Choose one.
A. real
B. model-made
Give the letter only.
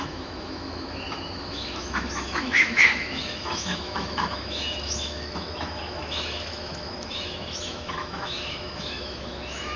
B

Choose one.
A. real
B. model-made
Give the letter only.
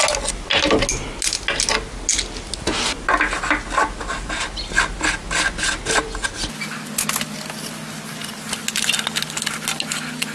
A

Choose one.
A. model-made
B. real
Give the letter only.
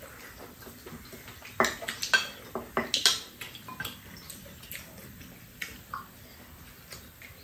B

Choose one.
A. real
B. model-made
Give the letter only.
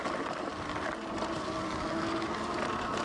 A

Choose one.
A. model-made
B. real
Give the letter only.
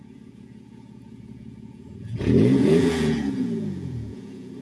A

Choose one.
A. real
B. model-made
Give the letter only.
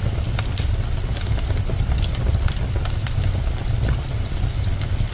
A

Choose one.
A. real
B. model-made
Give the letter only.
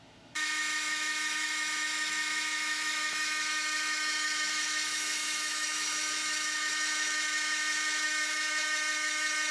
B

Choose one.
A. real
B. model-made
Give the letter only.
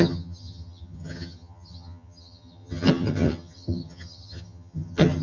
B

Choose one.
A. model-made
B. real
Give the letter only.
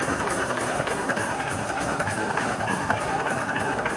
A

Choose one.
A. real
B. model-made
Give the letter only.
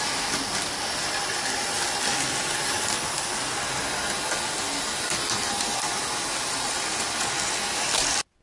A